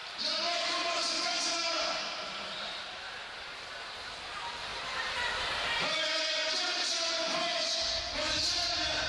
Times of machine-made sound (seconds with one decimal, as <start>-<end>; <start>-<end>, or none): 0.0-0.8